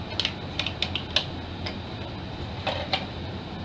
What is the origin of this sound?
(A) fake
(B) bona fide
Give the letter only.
B